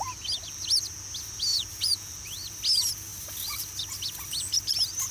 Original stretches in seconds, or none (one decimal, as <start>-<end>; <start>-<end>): 0.0-1.5; 2.1-5.1

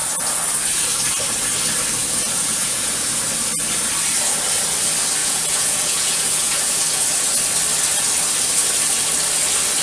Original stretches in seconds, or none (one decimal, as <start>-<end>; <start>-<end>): 0.0-2.0; 3.2-5.2; 7.3-9.8

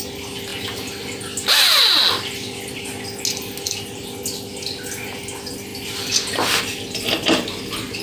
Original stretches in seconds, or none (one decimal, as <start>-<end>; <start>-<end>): 0.0-8.0

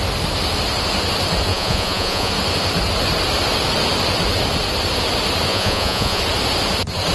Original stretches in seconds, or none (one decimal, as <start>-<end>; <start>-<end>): 0.0-1.5; 2.3-5.5; 6.2-7.1

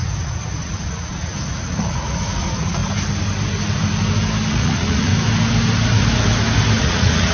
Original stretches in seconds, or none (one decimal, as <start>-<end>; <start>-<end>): 2.8-4.5; 5.1-6.8

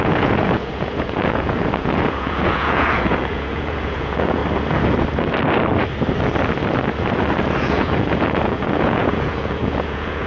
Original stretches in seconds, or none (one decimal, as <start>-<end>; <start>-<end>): 4.4-7.6